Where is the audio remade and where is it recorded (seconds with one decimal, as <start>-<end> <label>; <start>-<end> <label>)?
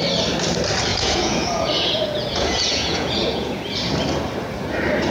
0.0-0.9 recorded; 0.9-3.6 remade; 3.6-5.1 recorded